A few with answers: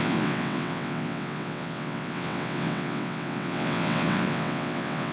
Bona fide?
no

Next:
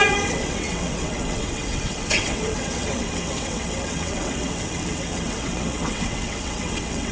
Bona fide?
no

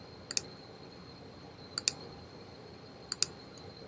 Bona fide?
yes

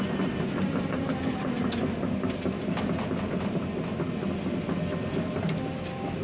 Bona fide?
yes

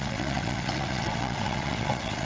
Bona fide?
no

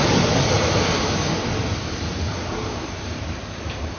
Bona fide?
yes